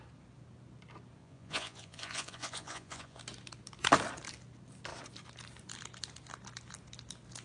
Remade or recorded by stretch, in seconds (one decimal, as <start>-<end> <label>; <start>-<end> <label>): 0.0-1.2 recorded; 1.2-3.2 remade; 3.2-7.4 recorded